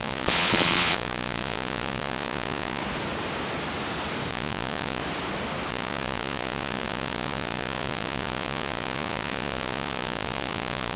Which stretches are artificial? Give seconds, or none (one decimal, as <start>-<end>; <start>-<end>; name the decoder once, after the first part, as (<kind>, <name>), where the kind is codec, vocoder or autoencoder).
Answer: 0.0-2.8 (vocoder, Vocos); 4.3-5.0; 5.7-11.0